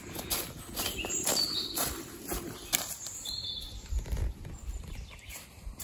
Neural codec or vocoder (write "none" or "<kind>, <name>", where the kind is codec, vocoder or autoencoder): vocoder, BigVGAN v2